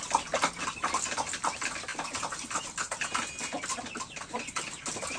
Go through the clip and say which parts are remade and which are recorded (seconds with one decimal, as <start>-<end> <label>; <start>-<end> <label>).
0.0-5.2 recorded